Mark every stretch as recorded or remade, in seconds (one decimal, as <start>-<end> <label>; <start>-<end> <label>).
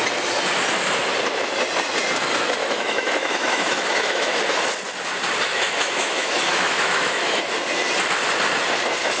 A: 0.0-2.6 recorded; 2.6-4.4 remade; 4.4-5.5 recorded; 5.5-7.4 remade; 7.4-9.2 recorded